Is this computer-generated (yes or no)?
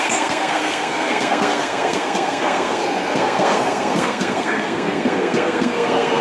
yes